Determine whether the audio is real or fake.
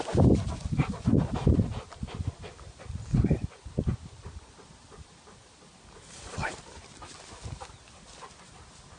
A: real